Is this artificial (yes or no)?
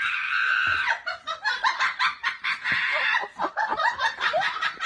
yes